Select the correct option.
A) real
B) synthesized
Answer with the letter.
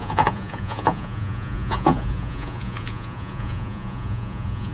B